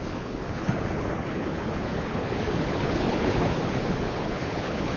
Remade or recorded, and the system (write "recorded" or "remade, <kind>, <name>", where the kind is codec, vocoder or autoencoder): remade, codec, HILCodec